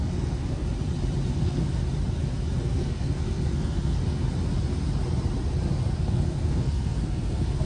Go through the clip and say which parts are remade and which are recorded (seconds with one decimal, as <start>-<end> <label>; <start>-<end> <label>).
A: 0.0-0.6 remade; 0.6-1.3 recorded; 1.3-1.8 remade; 1.8-2.6 recorded; 2.6-4.0 remade; 4.0-6.0 recorded; 6.0-7.7 remade